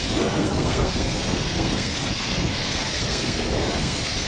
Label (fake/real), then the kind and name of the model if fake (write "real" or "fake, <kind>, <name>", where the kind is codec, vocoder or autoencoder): fake, codec, SNAC